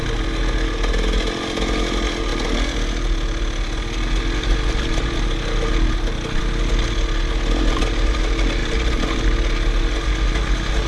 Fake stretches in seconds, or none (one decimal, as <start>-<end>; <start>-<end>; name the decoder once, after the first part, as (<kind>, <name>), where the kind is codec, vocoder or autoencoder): none